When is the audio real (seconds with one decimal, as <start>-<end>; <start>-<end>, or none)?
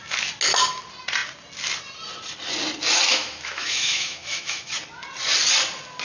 0.0-3.1; 4.7-6.0